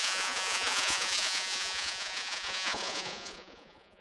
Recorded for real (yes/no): no